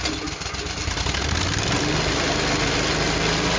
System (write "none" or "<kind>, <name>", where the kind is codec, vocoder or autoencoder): none